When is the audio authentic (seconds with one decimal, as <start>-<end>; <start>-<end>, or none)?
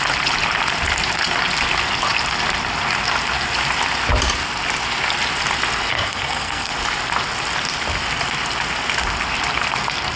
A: 0.0-5.9; 6.7-10.2